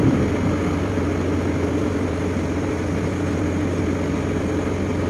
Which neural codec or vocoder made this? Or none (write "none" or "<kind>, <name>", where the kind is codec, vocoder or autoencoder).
none